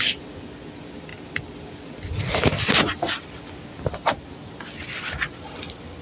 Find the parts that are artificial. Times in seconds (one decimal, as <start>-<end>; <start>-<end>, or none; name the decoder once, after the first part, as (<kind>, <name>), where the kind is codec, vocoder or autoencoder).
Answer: none